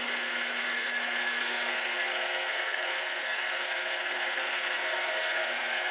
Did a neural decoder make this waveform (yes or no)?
yes